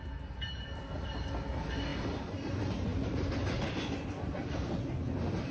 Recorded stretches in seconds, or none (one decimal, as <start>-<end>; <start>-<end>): 0.0-5.5